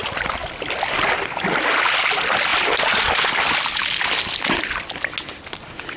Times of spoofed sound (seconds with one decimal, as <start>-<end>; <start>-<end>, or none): none